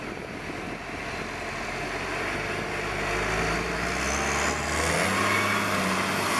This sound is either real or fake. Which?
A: real